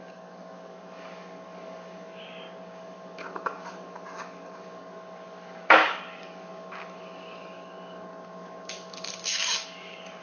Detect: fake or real fake